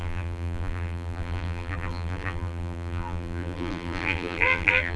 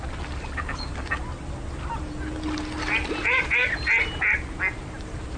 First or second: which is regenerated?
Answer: first